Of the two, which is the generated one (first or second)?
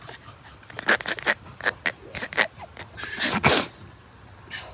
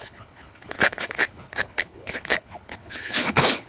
second